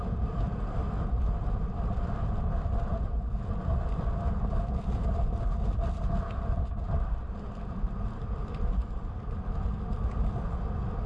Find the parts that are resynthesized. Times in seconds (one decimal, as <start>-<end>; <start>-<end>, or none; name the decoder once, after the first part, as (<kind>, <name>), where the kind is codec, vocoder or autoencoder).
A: none